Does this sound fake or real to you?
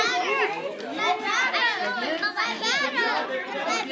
real